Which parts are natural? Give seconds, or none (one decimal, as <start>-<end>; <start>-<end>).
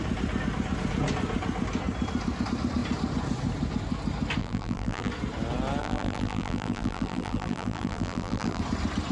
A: 0.0-4.4; 5.1-5.8; 8.6-9.1